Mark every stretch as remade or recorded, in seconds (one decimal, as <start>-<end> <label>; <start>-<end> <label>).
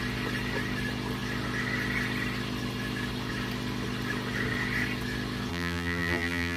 0.0-5.5 recorded; 5.5-6.6 remade